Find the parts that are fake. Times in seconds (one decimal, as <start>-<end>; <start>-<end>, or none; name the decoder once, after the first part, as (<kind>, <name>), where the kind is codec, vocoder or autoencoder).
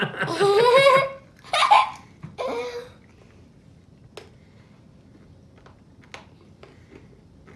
1.6-2.2 (vocoder, BigVGAN v2)